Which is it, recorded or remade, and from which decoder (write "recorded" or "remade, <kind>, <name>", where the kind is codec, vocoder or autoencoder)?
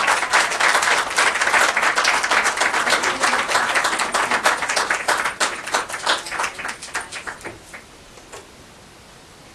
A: recorded